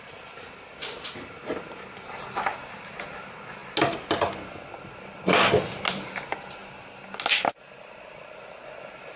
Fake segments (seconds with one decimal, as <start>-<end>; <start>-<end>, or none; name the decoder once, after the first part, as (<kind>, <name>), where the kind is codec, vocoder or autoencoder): none